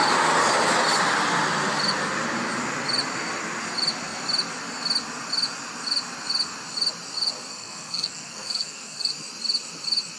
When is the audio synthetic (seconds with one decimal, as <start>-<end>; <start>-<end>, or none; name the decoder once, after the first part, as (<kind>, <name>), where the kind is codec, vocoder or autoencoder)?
7.5-9.1 (codec, SNAC)